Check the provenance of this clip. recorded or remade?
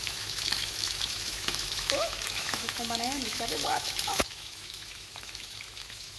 remade